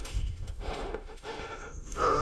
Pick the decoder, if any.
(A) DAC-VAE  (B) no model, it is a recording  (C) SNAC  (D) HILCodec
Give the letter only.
A